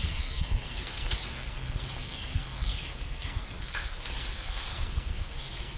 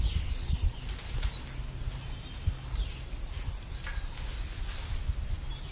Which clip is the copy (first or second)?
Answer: first